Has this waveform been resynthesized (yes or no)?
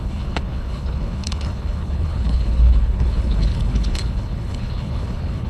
yes